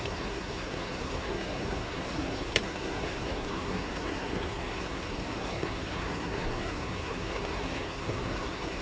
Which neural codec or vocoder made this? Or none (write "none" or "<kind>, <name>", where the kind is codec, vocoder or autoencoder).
codec, SNAC